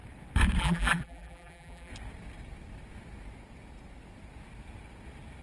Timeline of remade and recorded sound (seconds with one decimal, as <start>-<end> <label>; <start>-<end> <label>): 0.0-0.6 recorded; 0.6-1.9 remade; 1.9-5.4 recorded